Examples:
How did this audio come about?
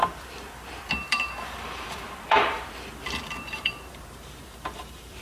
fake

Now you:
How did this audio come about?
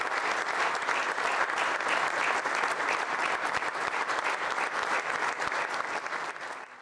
fake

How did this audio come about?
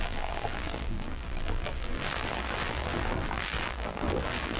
fake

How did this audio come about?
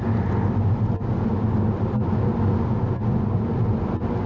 real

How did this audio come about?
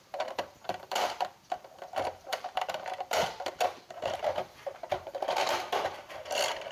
fake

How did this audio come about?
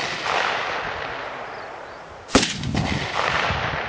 real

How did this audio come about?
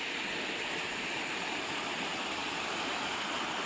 real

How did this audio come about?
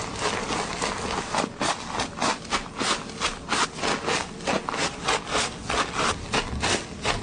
real